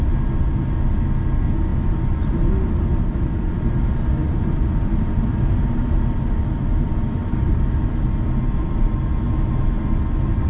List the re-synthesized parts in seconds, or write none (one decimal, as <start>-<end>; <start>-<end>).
4.2-6.0; 7.2-7.9